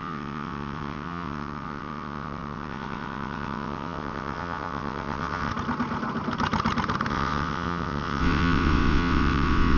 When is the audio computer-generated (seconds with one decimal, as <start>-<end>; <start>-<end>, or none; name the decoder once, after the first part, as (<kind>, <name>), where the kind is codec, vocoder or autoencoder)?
0.0-5.5 (vocoder, WaveNeXt); 7.1-9.8